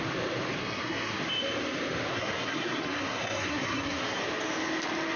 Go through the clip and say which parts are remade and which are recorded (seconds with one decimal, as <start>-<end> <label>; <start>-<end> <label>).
0.0-0.6 recorded; 0.6-1.2 remade; 1.2-2.1 recorded; 2.1-4.2 remade; 4.2-5.2 recorded